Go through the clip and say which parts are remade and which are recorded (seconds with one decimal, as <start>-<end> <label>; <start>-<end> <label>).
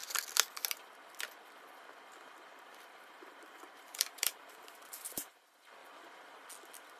0.0-2.5 recorded; 2.5-5.3 remade; 5.3-7.0 recorded